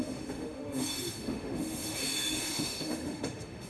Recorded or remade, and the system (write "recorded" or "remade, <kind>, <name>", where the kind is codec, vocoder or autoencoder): remade, autoencoder, DAC-VAE